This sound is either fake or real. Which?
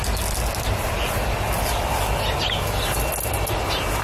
real